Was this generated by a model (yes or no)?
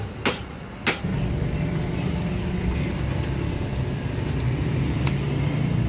no